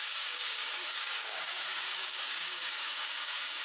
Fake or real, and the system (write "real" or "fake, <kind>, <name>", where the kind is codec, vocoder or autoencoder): fake, codec, DAC